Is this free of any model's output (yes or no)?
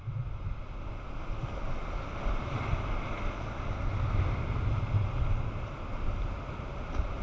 yes